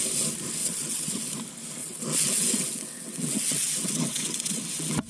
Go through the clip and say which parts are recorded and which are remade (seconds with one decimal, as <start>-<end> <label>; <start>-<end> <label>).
0.0-0.6 recorded; 0.6-1.3 remade; 1.3-1.8 recorded; 1.8-5.1 remade